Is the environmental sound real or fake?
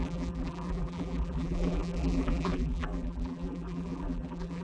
fake